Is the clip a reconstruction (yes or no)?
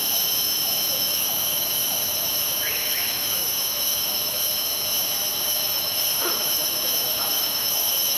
yes